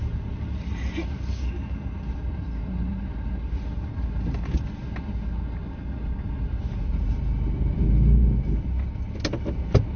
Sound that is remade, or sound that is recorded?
recorded